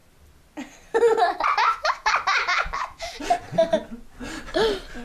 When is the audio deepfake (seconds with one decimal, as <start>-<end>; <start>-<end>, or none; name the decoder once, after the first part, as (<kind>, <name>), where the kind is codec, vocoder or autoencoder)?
1.6-2.1 (autoencoder, DAC-VAE); 2.5-3.2